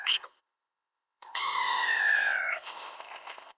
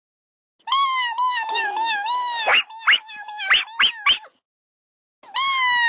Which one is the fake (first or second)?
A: first